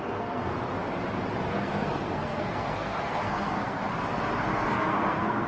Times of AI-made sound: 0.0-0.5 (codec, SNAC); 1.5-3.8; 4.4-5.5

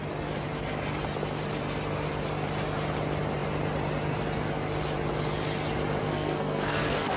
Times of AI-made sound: 6.0-7.2 (codec, SNAC)